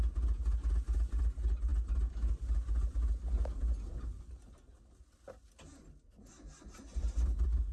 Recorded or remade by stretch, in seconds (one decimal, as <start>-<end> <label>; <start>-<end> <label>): 0.0-7.7 recorded